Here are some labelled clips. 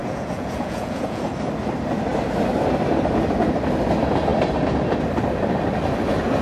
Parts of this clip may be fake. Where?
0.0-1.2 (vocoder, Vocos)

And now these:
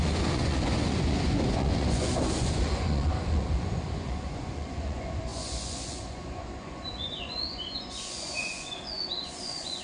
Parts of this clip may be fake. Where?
0.0-9.8 (vocoder, Vocos)

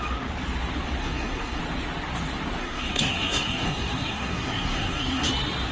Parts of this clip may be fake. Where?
1.0-1.6 (codec, SNAC); 2.6-5.3

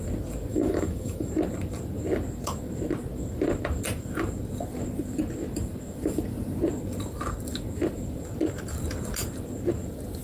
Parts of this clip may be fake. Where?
0.5-1.3 (autoencoder, DAC-VAE)

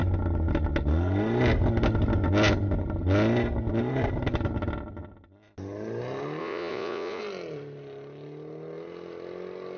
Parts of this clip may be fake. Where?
6.4-7.2 (vocoder, Vocos)

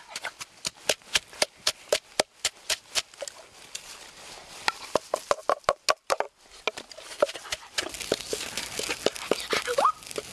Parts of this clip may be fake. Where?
none

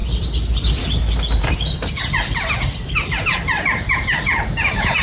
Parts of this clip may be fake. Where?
none

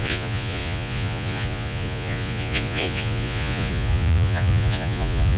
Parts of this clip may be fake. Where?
0.0-5.4 (vocoder, Vocos)